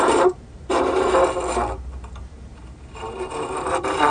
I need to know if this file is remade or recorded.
remade